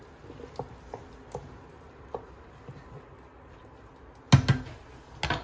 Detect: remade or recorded recorded